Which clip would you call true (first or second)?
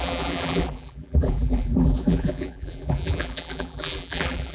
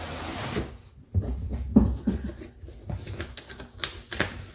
second